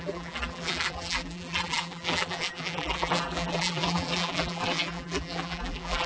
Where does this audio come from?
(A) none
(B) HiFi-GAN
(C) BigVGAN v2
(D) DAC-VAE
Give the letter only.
C